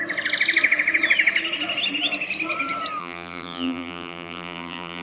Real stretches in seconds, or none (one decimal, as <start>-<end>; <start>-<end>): 0.0-3.0